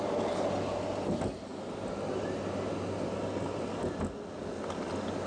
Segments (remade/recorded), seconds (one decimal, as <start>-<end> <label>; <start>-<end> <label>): 0.0-5.3 recorded